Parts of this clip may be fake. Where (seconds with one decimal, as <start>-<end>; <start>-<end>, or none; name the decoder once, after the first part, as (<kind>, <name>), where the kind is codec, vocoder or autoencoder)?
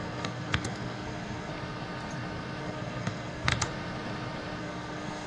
0.0-1.5 (codec, SNAC); 2.6-3.5; 4.6-5.3